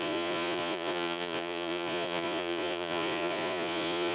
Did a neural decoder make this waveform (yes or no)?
yes